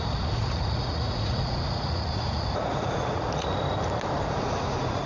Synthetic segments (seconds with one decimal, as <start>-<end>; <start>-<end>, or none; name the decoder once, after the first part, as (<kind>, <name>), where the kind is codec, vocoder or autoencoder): 0.0-3.5 (vocoder, Vocos); 4.3-5.1